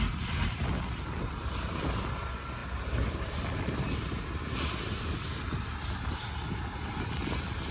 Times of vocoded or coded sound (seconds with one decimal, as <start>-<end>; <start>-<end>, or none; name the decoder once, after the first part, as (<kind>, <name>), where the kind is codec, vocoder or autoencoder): none